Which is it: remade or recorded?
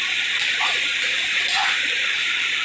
recorded